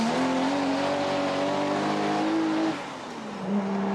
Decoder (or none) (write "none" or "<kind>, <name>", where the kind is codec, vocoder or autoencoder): none